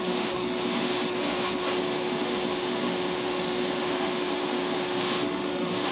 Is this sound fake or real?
fake